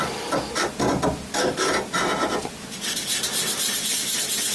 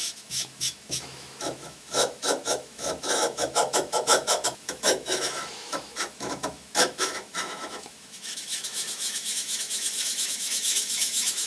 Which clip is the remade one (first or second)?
second